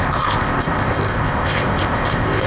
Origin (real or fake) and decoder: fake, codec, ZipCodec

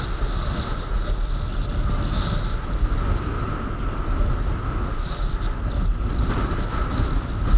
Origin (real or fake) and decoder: real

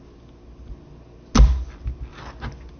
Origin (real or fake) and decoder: real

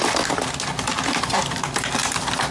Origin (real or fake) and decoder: real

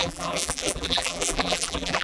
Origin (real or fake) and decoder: fake, vocoder, BigVGAN v2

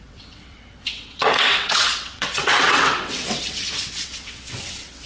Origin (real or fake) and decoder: fake, vocoder, WaveNeXt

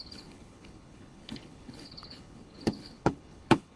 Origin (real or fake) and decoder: fake, codec, HILCodec